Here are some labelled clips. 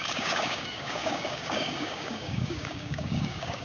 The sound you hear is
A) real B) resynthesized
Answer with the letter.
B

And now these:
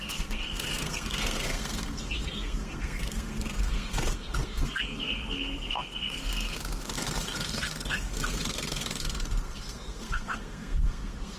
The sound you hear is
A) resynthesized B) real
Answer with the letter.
A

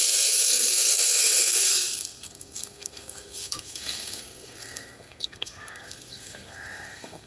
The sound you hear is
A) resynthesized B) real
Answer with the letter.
A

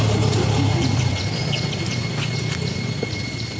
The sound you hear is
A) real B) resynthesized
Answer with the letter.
A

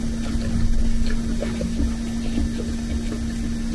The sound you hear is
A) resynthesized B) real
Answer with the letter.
B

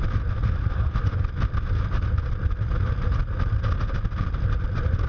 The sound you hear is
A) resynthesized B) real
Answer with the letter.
B